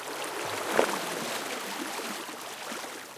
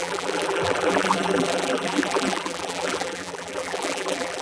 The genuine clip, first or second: first